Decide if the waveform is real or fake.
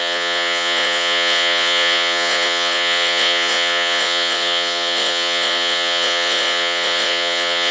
fake